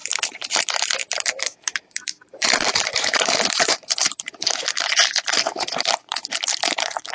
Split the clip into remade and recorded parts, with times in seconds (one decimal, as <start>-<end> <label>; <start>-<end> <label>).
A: 0.0-7.1 remade

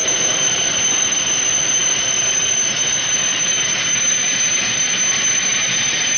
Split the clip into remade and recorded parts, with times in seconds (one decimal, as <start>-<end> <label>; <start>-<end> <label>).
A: 0.0-1.1 remade; 1.1-6.2 recorded

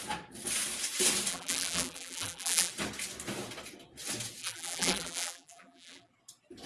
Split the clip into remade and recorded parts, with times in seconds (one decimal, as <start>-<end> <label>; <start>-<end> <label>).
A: 0.0-1.3 recorded; 1.3-2.7 remade; 2.7-4.4 recorded; 4.4-6.1 remade; 6.1-6.7 recorded